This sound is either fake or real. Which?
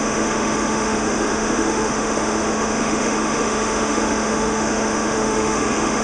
fake